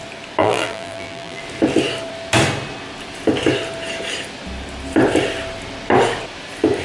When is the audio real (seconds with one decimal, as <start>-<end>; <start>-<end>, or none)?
0.0-0.4; 1.4-6.8